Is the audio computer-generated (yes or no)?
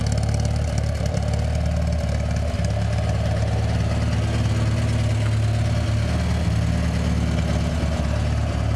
no